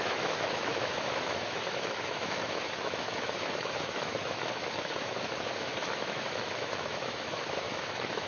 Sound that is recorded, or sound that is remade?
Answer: remade